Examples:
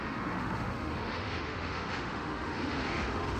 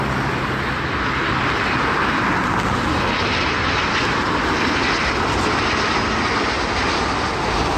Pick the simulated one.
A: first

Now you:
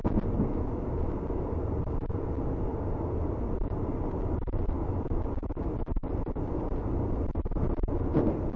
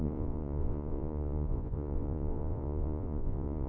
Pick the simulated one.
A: second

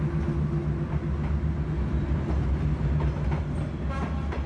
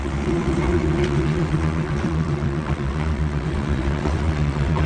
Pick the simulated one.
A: second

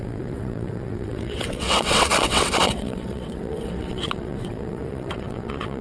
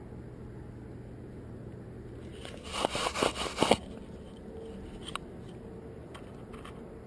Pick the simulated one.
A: first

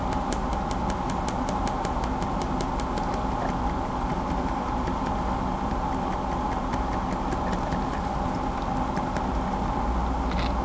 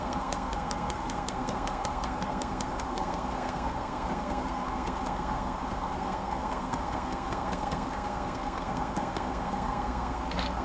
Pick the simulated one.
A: second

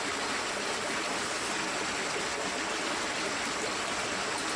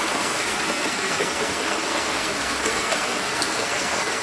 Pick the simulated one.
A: second